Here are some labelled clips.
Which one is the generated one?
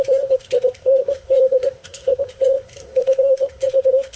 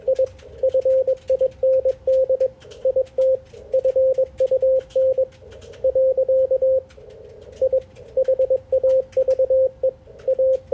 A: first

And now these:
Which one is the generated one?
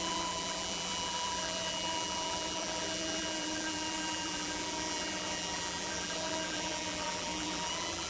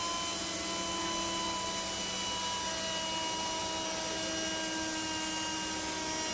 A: first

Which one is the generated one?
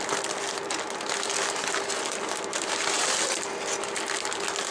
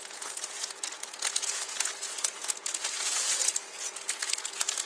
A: second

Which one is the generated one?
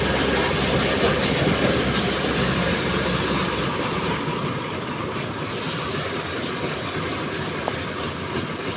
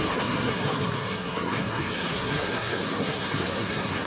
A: second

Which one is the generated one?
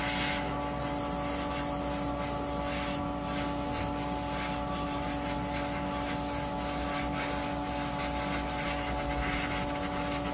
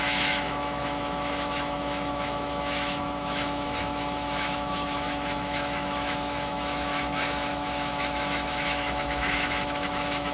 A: second